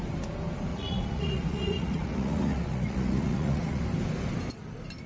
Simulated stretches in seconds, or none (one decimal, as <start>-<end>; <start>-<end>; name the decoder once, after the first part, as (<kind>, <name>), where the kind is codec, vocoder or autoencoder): 0.7-3.8 (vocoder, Vocos)